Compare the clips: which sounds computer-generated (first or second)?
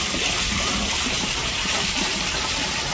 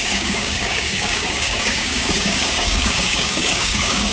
second